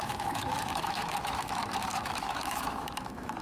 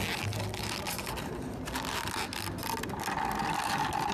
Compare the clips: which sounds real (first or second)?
second